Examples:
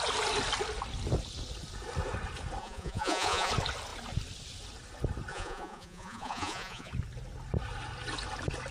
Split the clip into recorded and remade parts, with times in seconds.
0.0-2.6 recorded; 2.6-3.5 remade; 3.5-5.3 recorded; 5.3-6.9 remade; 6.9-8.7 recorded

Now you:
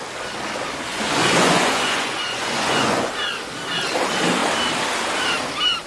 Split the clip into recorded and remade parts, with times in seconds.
0.0-0.9 recorded; 0.9-3.1 remade; 3.1-5.9 recorded

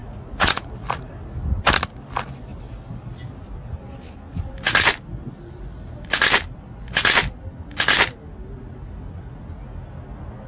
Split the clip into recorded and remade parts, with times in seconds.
0.0-0.7 remade; 0.7-10.5 recorded

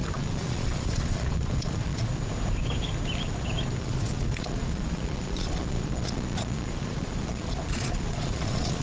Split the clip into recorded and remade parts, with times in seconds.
0.0-2.1 remade; 2.1-3.8 recorded; 3.8-8.8 remade

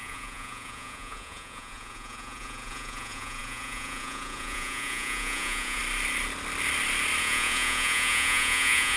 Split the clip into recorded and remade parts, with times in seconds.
0.0-5.8 remade; 5.8-7.2 recorded; 7.2-9.0 remade

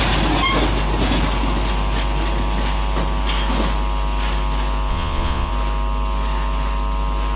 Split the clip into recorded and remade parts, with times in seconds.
0.0-4.9 recorded; 4.9-5.5 remade; 5.5-7.4 recorded

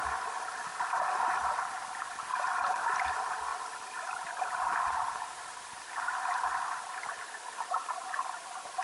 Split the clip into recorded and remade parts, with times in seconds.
0.0-8.8 recorded

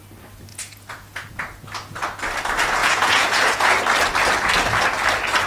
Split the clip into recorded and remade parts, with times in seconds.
0.0-0.5 recorded; 0.5-1.3 remade; 1.3-2.8 recorded; 2.8-3.7 remade; 3.7-5.5 recorded